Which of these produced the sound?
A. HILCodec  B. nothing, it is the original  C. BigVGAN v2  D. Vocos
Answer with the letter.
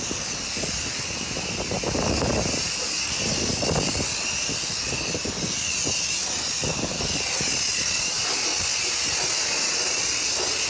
B